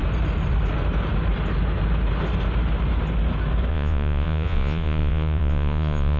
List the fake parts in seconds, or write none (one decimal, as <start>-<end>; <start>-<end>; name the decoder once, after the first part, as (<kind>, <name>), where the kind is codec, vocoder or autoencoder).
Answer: 3.7-6.2 (vocoder, Vocos)